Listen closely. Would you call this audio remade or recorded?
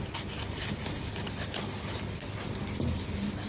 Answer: recorded